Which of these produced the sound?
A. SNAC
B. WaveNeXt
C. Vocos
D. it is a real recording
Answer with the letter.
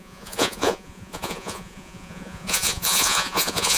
C